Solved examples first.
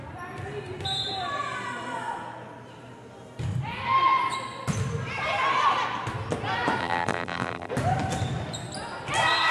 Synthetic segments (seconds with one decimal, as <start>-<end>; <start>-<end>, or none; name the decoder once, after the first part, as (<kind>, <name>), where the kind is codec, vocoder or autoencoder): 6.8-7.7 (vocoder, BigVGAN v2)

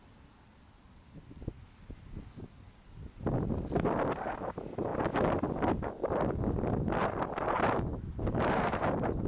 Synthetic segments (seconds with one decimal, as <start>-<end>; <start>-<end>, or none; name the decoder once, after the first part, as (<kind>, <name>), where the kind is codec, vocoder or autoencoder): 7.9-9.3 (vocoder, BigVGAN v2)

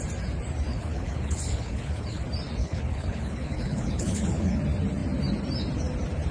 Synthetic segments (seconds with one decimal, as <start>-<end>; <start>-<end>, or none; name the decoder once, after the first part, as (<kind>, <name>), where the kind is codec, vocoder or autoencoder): 0.7-2.2 (codec, HILCodec); 2.6-4.6

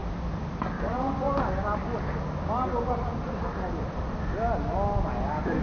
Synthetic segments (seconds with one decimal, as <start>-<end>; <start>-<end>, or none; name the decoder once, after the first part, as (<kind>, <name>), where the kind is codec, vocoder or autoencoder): none

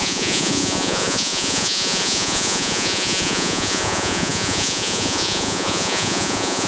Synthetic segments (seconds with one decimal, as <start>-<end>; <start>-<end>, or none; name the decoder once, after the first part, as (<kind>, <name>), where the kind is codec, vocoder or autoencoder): 0.0-6.7 (vocoder, Vocos)

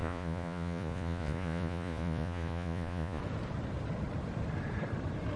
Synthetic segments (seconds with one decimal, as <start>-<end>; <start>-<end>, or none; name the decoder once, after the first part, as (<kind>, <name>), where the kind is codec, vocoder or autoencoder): 0.0-3.2 (vocoder, Vocos)

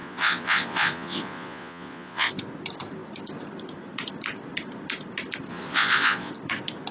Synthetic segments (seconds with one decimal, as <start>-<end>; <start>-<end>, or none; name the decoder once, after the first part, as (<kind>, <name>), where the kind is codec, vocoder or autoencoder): 0.0-2.3 (vocoder, Vocos); 5.5-6.3